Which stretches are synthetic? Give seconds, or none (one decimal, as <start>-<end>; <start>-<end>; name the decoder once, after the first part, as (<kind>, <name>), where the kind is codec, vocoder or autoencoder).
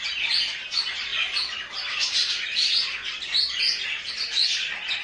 none